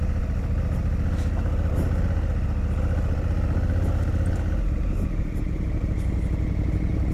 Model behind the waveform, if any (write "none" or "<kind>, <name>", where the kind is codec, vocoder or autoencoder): none